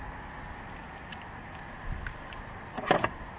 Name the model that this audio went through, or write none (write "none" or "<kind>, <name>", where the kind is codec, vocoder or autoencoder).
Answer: none